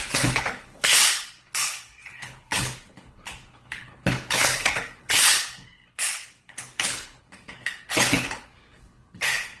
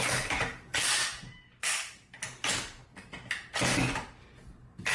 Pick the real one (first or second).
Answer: second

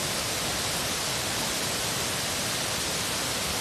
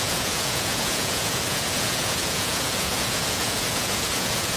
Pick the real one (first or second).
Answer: first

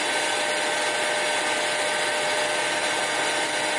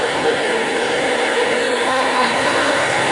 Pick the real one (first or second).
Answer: first